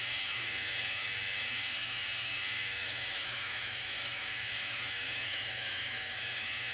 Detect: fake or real fake